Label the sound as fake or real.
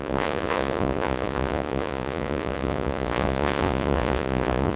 fake